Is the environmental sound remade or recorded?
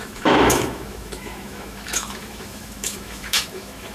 remade